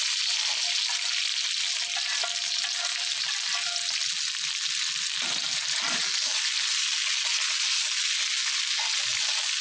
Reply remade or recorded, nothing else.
recorded